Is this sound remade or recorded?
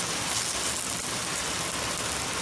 recorded